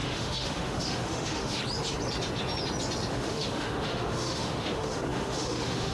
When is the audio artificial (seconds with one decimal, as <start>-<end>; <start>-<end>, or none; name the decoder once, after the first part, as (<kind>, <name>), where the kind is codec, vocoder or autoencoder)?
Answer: 0.0-1.6 (autoencoder, DAC-VAE); 3.1-5.9